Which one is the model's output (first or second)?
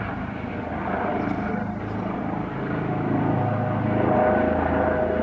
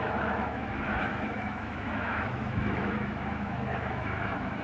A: second